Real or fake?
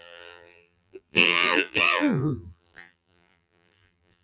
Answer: fake